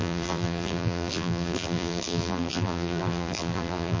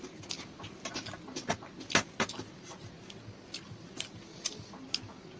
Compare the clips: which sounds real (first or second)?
second